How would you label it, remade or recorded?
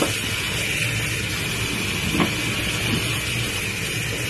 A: recorded